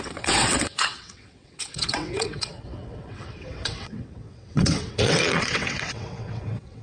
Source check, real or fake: fake